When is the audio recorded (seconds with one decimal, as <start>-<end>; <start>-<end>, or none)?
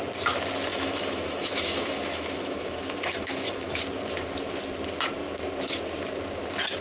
0.0-0.7; 3.8-6.8